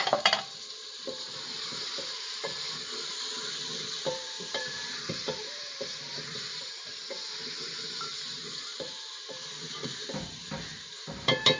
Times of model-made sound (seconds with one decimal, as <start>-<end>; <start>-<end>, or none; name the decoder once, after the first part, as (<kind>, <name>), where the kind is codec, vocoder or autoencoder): 0.0-6.9 (vocoder, BigVGAN v2); 7.7-11.6